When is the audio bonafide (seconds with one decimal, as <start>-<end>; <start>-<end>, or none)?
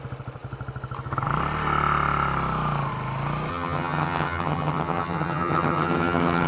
0.0-3.5